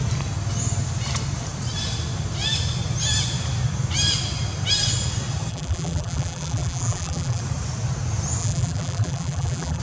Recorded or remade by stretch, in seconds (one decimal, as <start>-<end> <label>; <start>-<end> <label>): 0.0-5.5 recorded; 5.5-7.4 remade; 7.4-8.4 recorded; 8.4-9.8 remade